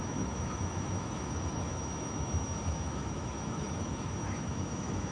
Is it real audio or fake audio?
fake